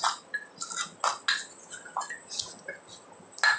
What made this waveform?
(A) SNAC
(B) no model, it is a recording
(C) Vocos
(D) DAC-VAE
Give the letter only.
B